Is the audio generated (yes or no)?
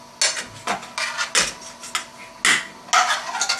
no